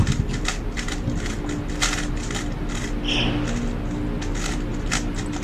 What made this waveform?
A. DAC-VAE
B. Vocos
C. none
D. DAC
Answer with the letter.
C